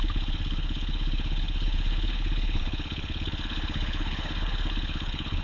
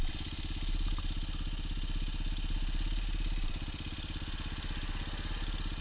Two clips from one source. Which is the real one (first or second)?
second